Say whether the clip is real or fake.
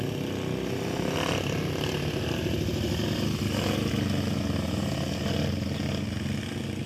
real